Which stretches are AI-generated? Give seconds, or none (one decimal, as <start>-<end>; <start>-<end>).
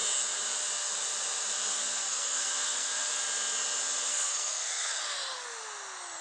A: 1.7-3.1; 4.1-5.0